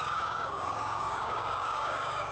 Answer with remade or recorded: remade